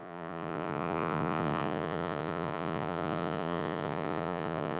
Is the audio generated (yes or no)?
yes